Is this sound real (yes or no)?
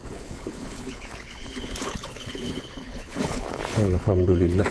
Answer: no